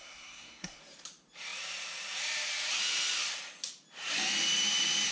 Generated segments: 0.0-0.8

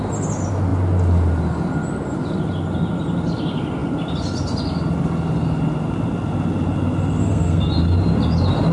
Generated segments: 7.2-7.7

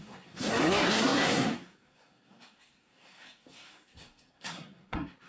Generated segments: 0.0-5.3

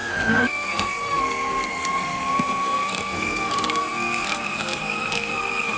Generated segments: 0.0-5.8

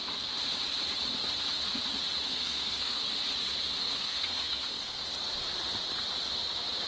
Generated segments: 2.3-3.0; 3.8-5.0

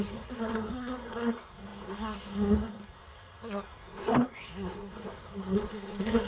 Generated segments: 0.0-6.3

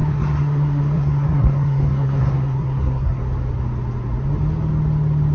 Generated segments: 0.0-3.2